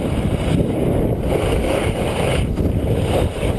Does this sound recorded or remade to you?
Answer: recorded